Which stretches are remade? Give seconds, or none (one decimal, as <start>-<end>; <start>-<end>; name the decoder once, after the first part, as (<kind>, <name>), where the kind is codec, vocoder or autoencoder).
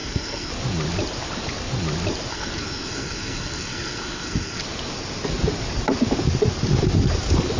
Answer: 0.0-0.5 (codec, SNAC); 2.3-4.6